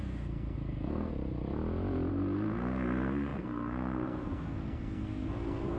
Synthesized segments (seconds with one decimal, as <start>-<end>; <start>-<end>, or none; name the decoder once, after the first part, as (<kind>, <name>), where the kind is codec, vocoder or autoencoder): 0.0-1.1 (codec, SNAC); 2.1-5.8